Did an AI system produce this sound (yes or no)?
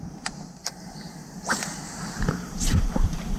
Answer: yes